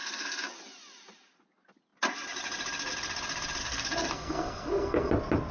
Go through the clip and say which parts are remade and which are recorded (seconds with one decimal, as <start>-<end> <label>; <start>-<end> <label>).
0.0-0.5 remade; 0.5-3.6 recorded; 3.6-5.1 remade; 5.1-5.5 recorded